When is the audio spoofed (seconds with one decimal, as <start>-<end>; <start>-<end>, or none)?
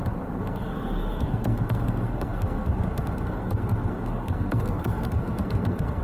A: 0.0-6.0